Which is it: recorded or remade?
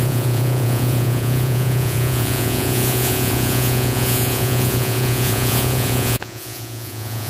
remade